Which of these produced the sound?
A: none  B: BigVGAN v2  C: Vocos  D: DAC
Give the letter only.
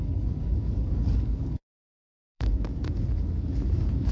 D